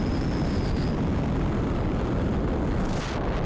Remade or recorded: recorded